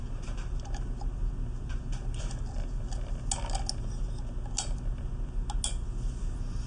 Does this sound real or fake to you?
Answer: real